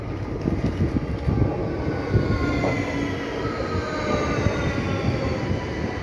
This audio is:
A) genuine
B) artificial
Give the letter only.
A